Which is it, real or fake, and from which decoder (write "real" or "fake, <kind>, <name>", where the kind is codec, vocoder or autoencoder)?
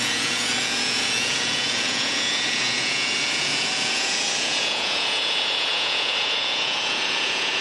fake, vocoder, Vocos